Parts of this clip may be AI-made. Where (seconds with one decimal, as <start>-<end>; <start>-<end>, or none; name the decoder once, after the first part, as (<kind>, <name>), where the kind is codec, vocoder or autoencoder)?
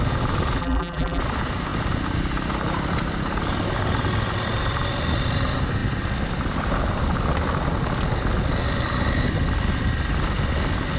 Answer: 0.6-1.2 (vocoder, BigVGAN v2)